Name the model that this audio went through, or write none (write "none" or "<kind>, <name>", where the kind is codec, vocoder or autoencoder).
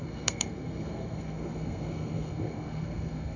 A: codec, SNAC